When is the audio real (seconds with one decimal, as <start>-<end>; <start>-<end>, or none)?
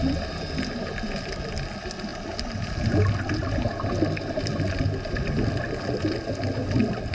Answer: 0.0-2.1; 2.7-3.4; 3.9-7.1